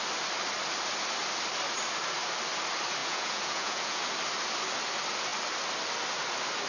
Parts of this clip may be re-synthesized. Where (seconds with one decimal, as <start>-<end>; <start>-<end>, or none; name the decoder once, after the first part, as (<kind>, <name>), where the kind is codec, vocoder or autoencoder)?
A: 3.0-4.0 (vocoder, Vocos)

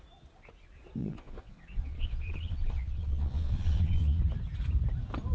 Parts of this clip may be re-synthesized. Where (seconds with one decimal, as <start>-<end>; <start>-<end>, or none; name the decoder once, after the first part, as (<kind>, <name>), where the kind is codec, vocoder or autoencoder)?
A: 1.0-4.2 (vocoder, Vocos)

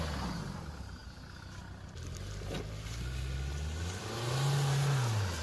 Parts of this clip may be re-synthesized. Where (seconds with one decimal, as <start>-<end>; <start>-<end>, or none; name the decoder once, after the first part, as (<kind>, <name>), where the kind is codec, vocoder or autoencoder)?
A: none

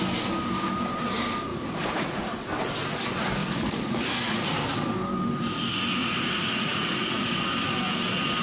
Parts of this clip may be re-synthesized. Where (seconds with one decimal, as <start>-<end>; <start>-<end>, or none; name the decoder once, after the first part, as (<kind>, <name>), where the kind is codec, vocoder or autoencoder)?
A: 1.5-2.6 (vocoder, Vocos); 3.4-4.5; 6.0-7.3

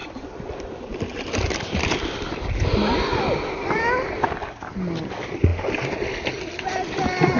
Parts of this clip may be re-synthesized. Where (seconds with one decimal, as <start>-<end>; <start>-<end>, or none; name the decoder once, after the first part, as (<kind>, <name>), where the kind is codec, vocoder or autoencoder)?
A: none

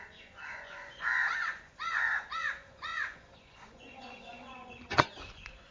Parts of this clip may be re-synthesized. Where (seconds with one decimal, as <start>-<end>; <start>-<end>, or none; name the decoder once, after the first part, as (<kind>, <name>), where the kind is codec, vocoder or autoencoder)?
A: 0.0-5.7 (vocoder, Vocos)

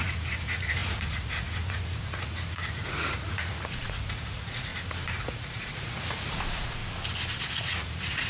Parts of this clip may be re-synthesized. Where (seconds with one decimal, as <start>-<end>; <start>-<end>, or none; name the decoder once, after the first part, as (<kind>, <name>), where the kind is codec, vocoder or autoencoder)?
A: 0.0-4.7 (vocoder, Vocos); 5.2-6.8; 7.4-8.3

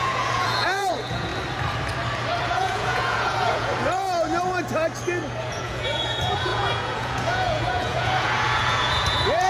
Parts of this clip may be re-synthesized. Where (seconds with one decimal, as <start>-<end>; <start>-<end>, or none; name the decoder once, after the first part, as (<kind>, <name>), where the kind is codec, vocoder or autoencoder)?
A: 0.0-1.3 (vocoder, Vocos); 2.4-3.7; 5.4-9.5